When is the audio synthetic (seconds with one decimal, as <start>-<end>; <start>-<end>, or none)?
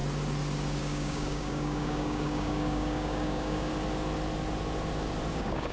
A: 0.8-3.7; 5.3-5.7